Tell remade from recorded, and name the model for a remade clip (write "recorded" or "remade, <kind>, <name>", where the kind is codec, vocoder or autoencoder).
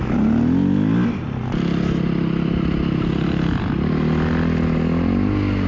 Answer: recorded